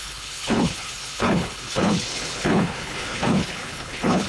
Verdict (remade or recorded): remade